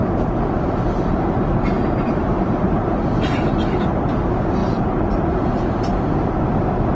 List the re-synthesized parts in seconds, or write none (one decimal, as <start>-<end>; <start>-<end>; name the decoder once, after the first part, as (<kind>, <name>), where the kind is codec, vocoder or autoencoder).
0.0-2.8 (vocoder, BigVGAN v2); 4.6-6.1